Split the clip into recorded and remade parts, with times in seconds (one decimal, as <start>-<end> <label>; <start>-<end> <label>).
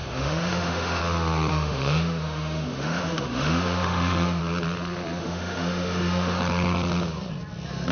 0.0-1.0 remade; 1.0-1.5 recorded; 1.5-4.4 remade; 4.4-5.2 recorded; 5.2-6.4 remade; 6.4-7.9 recorded